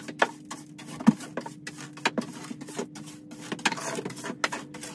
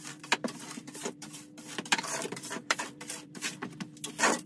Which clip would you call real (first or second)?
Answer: first